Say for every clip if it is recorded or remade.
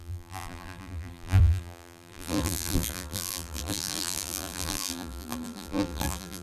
remade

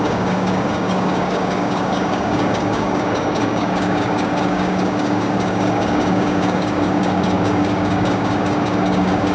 remade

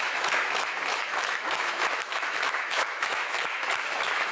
remade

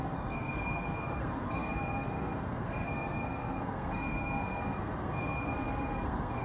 remade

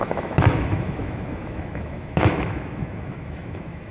remade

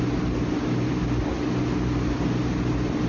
recorded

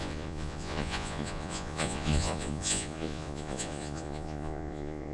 remade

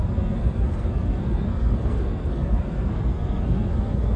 remade